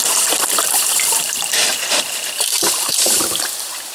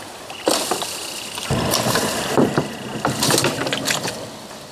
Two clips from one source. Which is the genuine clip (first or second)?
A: second